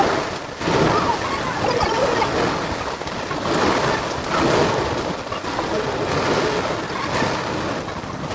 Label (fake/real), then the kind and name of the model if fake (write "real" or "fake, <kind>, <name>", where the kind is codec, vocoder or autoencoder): real